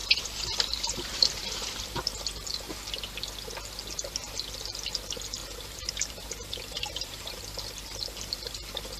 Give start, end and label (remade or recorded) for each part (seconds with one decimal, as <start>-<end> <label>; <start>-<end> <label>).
0.0-2.2 remade; 2.2-5.4 recorded; 5.4-7.4 remade; 7.4-9.0 recorded